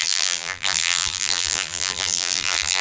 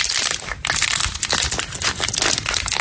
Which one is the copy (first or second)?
first